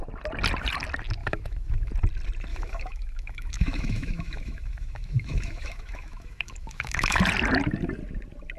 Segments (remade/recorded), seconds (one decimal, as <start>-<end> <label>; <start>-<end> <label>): 0.0-1.2 recorded; 1.2-1.9 remade; 1.9-2.5 recorded; 2.5-7.2 remade; 7.2-8.6 recorded